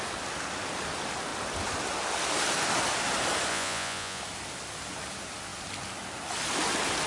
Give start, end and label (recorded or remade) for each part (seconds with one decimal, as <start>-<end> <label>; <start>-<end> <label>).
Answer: 0.0-3.5 recorded; 3.5-4.2 remade; 4.2-7.1 recorded